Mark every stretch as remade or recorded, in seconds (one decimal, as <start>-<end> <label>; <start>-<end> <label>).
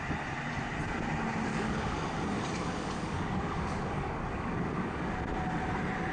0.0-1.5 recorded; 1.5-5.2 remade; 5.2-6.1 recorded